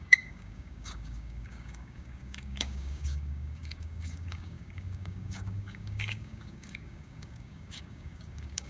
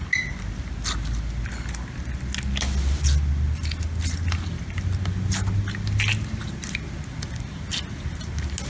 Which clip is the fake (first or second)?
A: first